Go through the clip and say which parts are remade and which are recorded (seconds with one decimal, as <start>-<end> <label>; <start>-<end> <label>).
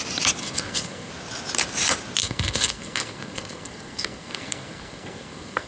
0.0-0.4 recorded; 0.4-1.1 remade; 1.1-2.2 recorded; 2.2-5.7 remade